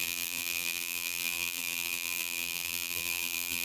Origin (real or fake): fake